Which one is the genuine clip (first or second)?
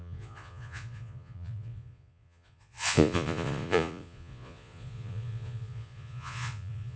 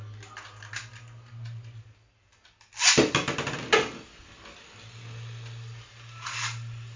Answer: second